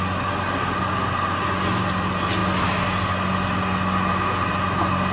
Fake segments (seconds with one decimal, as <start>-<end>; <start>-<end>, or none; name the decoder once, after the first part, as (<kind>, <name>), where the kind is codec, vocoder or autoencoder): none